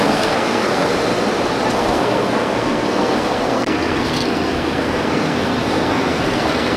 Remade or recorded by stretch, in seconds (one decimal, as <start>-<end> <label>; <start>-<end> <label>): 0.0-0.9 remade; 0.9-1.7 recorded; 1.7-6.8 remade